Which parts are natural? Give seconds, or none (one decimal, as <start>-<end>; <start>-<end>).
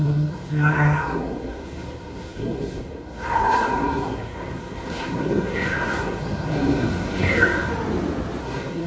7.7-8.4